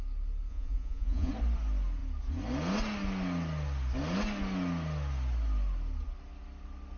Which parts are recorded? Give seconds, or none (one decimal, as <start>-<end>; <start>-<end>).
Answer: 0.0-0.5; 1.3-7.0